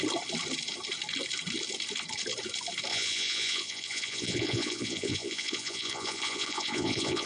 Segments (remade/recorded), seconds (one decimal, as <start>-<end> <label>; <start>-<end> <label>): 0.0-2.9 recorded; 2.9-7.3 remade